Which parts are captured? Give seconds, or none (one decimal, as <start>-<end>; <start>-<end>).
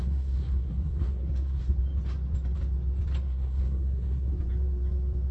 1.8-3.2; 4.3-5.3